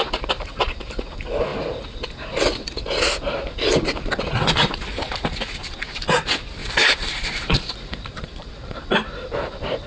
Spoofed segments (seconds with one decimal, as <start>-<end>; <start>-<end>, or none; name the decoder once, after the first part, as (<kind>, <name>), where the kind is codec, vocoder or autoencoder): 6.6-9.9 (vocoder, BigVGAN v2)